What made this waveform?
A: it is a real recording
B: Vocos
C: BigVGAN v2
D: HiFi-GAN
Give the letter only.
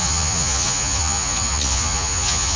B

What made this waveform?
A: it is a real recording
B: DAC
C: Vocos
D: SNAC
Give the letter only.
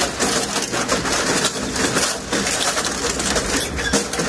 A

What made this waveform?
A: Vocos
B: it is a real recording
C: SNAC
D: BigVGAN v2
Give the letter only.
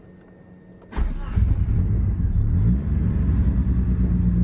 B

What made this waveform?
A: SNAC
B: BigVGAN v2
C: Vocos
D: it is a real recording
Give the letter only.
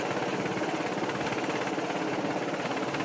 D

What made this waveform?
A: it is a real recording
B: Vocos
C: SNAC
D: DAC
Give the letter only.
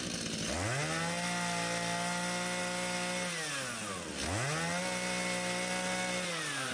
A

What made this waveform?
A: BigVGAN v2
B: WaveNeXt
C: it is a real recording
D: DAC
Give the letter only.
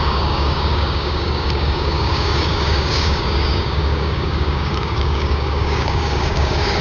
D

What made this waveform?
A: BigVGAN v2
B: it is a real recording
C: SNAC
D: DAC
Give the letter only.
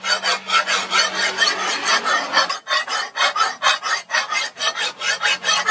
B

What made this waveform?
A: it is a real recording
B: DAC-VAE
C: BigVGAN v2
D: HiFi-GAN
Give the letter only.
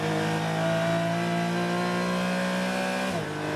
A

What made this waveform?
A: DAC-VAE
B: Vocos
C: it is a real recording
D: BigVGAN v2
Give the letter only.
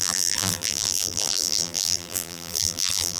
D